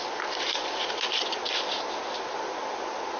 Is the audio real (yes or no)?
yes